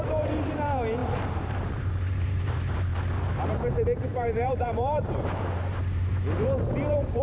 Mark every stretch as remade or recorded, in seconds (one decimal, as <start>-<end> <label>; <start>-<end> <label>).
0.0-2.9 remade; 2.9-3.4 recorded; 3.4-7.2 remade